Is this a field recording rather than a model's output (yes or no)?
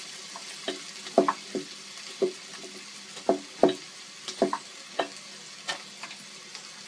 yes